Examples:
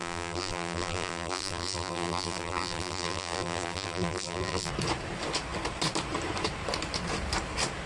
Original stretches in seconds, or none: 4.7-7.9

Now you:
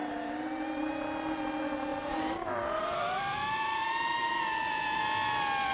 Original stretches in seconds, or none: 0.9-1.9; 5.0-5.7

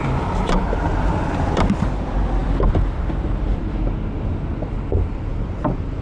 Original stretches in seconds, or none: 0.0-2.4; 3.6-6.0